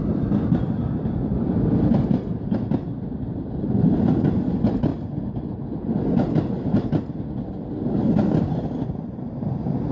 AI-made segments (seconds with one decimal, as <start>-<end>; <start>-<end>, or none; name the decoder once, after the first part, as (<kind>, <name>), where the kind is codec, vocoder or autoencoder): none

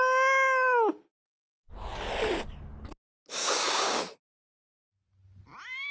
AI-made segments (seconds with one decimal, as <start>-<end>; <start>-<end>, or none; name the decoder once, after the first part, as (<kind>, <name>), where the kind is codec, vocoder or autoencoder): 3.4-4.0 (codec, DAC)

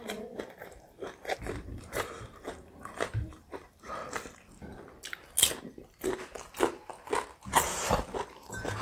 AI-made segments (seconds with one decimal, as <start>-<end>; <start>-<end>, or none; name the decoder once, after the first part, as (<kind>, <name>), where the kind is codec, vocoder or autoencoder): 0.0-4.0 (vocoder, BigVGAN v2); 7.5-8.8

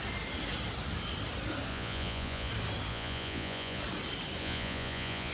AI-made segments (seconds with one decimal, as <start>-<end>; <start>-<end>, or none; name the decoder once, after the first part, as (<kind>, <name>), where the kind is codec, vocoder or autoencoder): 1.7-2.5 (vocoder, Vocos); 2.9-3.8; 4.4-5.3

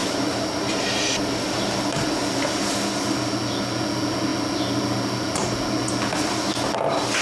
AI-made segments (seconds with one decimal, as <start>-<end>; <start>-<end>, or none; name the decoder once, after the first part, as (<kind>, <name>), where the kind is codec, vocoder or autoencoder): 0.0-1.8 (vocoder, BigVGAN v2)

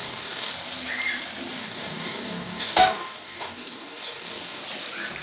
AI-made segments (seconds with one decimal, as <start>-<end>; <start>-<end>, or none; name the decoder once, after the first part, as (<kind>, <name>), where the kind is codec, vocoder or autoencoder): 0.0-0.5 (codec, DAC); 1.5-4.6